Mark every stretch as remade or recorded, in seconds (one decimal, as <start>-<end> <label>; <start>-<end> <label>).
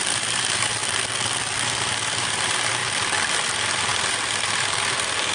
0.0-0.8 remade; 0.8-1.8 recorded; 1.8-2.8 remade; 2.8-3.3 recorded; 3.3-5.3 remade